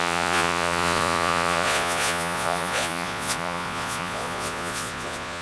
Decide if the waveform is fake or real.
fake